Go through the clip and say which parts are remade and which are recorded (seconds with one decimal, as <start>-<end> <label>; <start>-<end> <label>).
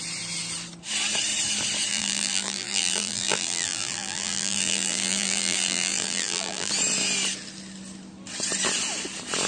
0.0-1.9 recorded; 1.9-6.7 remade; 6.7-9.5 recorded